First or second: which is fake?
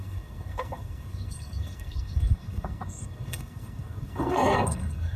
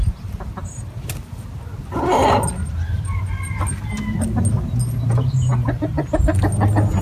first